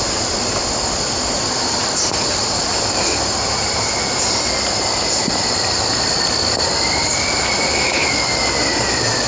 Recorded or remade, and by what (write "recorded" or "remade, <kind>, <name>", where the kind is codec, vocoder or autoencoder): recorded